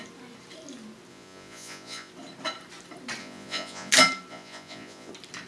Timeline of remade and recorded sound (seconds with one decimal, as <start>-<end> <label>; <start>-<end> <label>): 0.0-1.1 recorded; 1.1-2.1 remade; 2.1-3.2 recorded; 3.2-3.9 remade; 3.9-4.3 recorded; 4.3-5.1 remade; 5.1-5.5 recorded